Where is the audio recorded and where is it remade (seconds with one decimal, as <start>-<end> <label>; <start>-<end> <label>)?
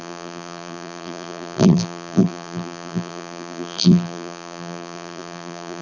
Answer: 0.0-5.8 remade